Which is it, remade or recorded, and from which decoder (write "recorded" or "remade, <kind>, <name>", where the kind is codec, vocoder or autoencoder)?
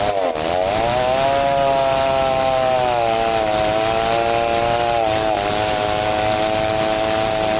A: recorded